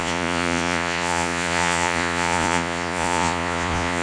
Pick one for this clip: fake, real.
fake